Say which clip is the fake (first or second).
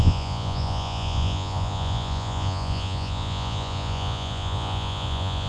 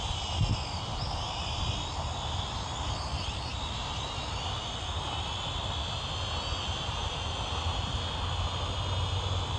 first